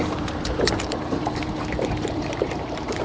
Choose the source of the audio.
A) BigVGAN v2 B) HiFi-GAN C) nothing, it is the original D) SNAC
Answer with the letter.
A